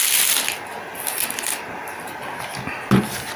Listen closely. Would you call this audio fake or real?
real